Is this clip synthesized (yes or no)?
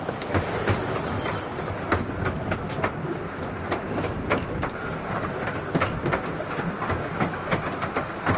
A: no